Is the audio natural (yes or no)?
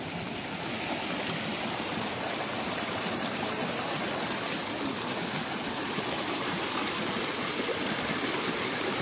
yes